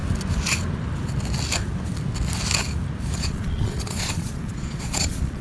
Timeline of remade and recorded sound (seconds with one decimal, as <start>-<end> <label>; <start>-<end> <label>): 0.0-3.2 recorded; 3.2-5.4 remade